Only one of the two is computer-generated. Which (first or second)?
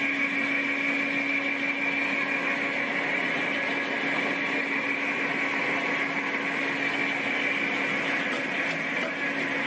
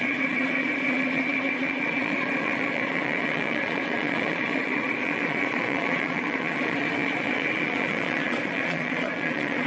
second